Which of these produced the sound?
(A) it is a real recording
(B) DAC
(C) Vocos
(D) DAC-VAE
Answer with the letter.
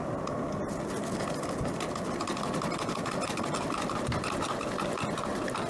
A